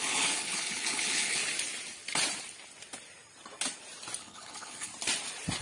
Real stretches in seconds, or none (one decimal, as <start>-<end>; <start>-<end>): 1.4-4.2; 4.9-5.6